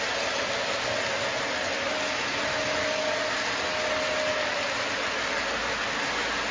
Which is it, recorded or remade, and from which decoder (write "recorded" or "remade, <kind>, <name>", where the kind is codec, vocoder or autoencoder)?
recorded